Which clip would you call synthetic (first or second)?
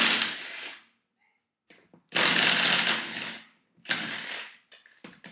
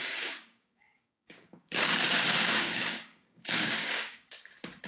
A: second